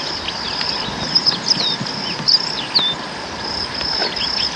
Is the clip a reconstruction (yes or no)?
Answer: no